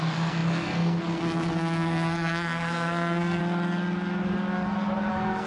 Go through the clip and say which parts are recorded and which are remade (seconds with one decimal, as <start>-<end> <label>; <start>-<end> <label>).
0.0-3.4 remade; 3.4-5.1 recorded; 5.1-5.5 remade